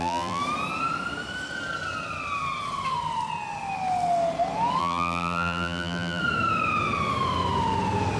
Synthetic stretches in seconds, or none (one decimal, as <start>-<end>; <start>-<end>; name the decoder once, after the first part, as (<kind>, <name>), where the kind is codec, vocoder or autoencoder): 0.0-0.4 (vocoder, BigVGAN v2); 4.8-6.2